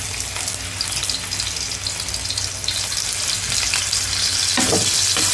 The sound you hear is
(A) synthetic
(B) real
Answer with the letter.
B